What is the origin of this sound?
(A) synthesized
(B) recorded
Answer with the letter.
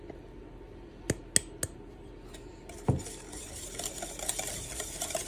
B